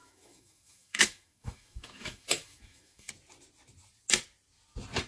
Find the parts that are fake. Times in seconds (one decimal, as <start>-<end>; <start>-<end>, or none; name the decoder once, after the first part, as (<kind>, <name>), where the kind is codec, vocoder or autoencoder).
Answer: 0.0-3.1 (autoencoder, DAC-VAE)